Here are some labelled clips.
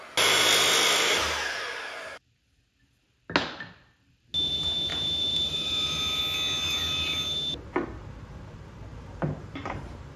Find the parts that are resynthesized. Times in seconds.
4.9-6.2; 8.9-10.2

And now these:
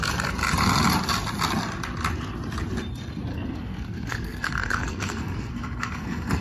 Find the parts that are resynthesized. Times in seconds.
3.3-6.4

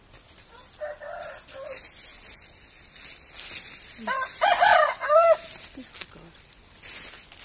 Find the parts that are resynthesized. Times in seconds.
none

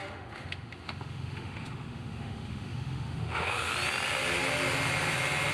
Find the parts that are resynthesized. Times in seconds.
0.0-3.7

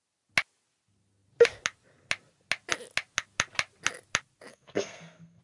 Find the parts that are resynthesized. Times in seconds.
4.5-5.4

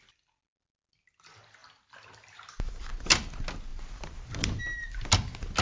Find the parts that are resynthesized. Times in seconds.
1.6-2.9; 3.7-4.6

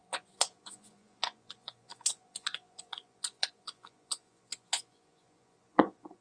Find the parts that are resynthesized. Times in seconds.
0.0-6.2

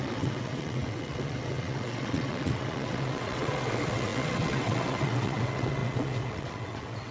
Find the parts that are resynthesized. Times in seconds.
0.0-7.1